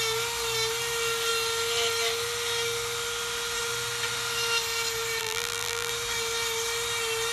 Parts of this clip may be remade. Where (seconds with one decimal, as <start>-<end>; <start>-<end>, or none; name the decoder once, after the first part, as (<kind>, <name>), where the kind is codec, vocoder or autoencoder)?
5.2-5.9 (vocoder, BigVGAN v2)